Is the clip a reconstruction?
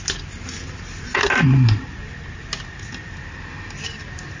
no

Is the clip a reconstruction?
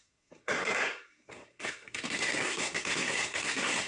yes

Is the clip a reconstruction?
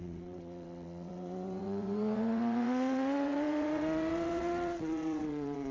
yes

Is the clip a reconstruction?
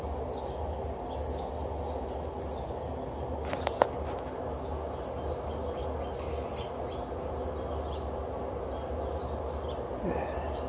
no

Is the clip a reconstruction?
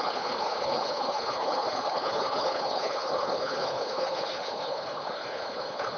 yes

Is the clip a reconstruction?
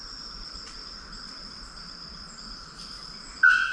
yes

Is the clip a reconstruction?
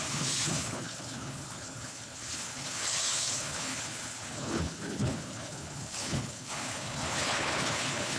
yes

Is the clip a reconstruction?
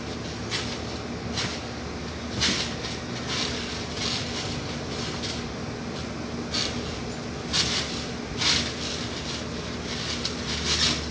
no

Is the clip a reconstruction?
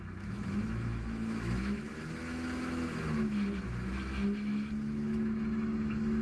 yes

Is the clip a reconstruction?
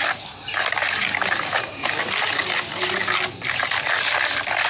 no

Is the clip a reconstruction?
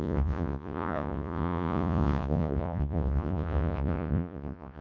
yes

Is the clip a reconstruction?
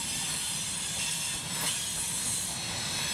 no